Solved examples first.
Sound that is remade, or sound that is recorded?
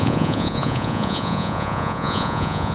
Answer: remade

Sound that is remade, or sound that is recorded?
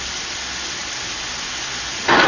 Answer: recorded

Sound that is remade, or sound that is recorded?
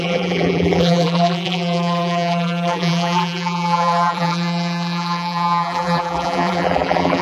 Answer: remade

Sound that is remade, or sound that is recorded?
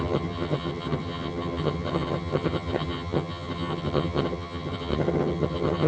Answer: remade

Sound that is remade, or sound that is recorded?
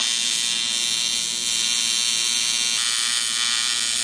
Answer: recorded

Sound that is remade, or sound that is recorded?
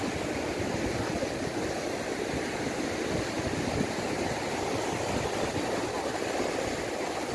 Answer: recorded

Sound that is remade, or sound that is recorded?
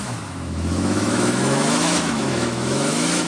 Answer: remade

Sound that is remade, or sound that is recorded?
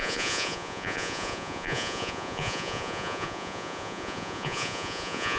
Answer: remade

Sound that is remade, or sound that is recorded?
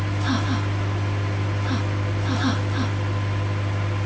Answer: recorded